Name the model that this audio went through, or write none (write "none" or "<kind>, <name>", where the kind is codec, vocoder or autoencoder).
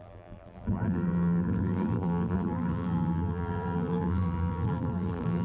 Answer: vocoder, BigVGAN v2